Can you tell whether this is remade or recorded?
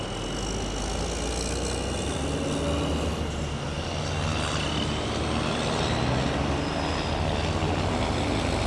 recorded